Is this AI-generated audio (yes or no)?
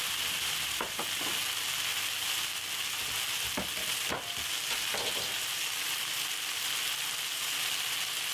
no